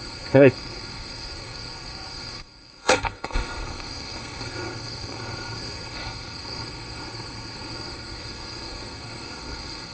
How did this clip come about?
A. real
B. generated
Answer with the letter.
B